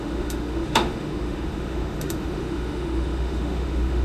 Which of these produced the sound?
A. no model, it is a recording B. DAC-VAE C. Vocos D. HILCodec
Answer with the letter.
B